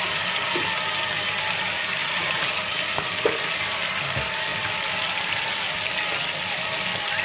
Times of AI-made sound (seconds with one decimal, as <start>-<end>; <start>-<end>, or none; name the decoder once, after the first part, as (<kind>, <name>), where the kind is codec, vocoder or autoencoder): 2.0-2.5 (vocoder, BigVGAN v2)